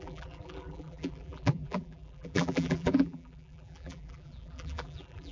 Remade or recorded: remade